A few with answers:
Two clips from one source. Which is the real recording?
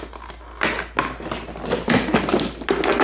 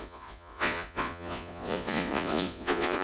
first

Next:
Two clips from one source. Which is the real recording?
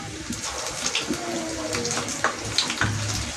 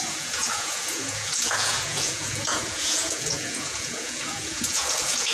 first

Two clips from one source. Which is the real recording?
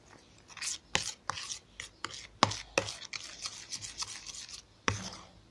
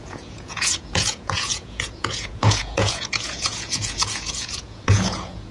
first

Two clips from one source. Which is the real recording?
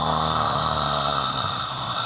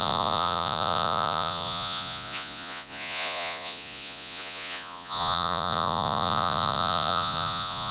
first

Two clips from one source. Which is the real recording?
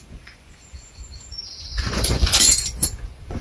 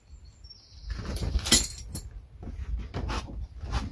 second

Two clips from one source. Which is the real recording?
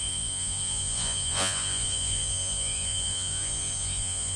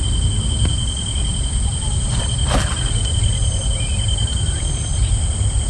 second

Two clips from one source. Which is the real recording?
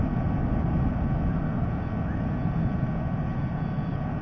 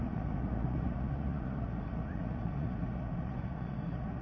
first